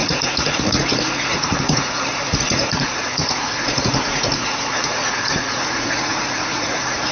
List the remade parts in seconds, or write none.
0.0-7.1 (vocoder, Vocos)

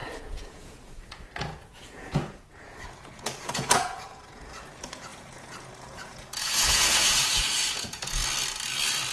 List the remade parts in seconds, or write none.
0.0-8.2 (vocoder, Vocos)